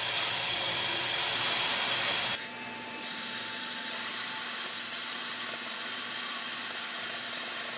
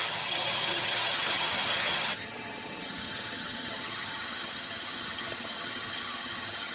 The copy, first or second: second